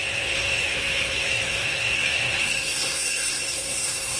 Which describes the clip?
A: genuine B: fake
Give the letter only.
B